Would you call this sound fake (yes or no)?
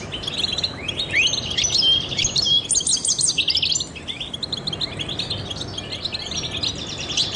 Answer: no